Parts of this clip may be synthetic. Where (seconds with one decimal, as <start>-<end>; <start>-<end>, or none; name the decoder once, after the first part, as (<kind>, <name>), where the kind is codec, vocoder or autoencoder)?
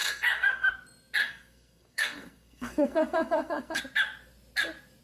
0.0-0.7 (codec, SNAC); 1.2-3.8